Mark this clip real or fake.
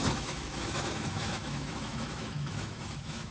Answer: fake